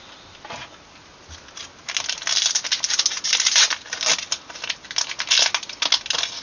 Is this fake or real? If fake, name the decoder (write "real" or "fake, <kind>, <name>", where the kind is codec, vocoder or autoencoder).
real